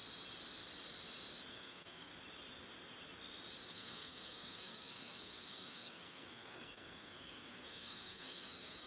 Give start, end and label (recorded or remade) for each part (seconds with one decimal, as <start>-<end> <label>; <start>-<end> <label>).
0.0-1.5 recorded; 1.5-2.1 remade; 2.1-3.7 recorded; 3.7-8.9 remade